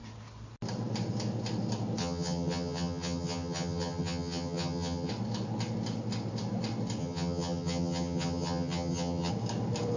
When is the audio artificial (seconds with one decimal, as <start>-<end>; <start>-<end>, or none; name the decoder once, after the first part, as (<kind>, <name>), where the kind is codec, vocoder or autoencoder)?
2.0-5.1 (vocoder, HiFi-GAN); 7.0-9.3